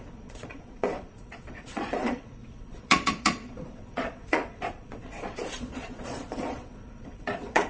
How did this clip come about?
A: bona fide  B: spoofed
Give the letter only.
B